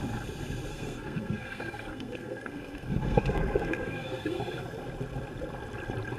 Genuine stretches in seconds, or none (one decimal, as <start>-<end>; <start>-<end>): 0.0-0.7; 4.4-6.2